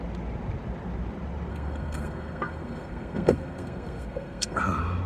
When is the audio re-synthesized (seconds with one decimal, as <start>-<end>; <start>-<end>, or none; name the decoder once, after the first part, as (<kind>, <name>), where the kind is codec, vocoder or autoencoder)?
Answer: 1.5-4.6 (codec, SNAC)